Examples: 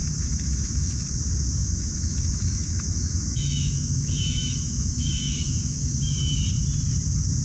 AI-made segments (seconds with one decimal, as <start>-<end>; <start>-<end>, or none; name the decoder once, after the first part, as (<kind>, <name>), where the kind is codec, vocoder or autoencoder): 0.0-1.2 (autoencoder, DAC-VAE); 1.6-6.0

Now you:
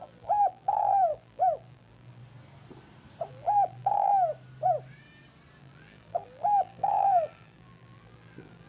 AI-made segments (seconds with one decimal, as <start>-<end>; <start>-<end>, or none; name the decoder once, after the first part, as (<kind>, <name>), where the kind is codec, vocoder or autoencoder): 0.0-2.2 (vocoder, BigVGAN v2); 3.3-4.1; 5.6-8.7

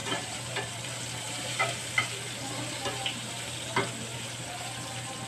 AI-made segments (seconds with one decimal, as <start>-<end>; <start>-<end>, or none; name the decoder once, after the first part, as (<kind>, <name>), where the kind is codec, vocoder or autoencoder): 0.0-2.1 (vocoder, BigVGAN v2)